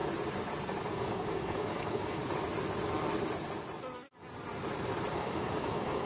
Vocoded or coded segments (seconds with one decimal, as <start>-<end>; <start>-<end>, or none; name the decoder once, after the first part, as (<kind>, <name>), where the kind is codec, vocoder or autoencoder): 0.9-2.2 (codec, DAC); 5.1-6.1